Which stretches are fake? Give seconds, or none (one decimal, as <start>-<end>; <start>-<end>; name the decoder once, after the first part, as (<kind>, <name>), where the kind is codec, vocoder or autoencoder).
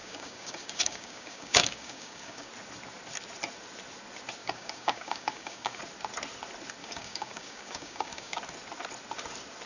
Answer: 0.0-2.5 (codec, DAC); 4.4-5.8; 6.8-8.4